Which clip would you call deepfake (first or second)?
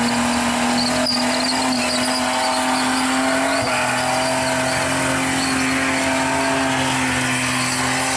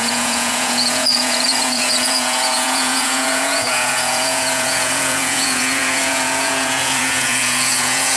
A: second